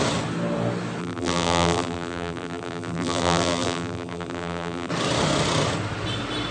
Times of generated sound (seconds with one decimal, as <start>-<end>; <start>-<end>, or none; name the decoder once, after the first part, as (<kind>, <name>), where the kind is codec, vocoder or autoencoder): 1.0-4.9 (vocoder, BigVGAN v2)